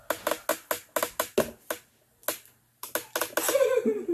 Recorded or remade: recorded